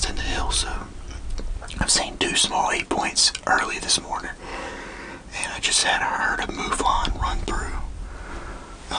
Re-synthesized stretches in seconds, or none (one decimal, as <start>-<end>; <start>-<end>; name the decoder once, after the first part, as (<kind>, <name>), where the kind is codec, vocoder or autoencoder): 4.5-5.1 (codec, DAC)